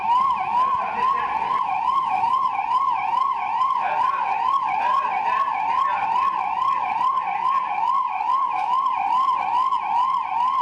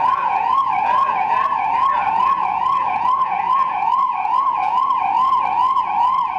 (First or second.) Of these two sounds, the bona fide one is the first